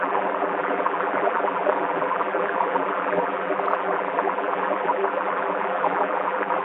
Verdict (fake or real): fake